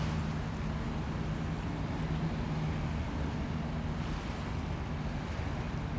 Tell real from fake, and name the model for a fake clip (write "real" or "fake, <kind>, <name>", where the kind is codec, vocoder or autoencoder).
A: real